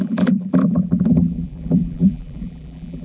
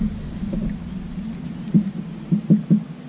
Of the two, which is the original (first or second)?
second